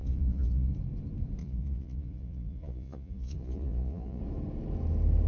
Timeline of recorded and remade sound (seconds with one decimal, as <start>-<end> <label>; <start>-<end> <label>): 0.0-0.7 remade; 0.7-1.4 recorded; 1.4-4.2 remade; 4.2-5.3 recorded